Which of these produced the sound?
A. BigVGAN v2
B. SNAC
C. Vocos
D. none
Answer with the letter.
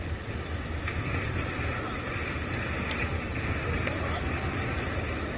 D